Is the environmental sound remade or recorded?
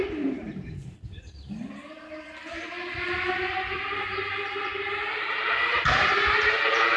remade